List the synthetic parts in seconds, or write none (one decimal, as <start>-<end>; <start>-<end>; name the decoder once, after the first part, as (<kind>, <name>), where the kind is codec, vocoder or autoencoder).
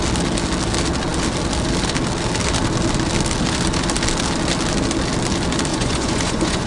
5.7-6.7 (vocoder, Vocos)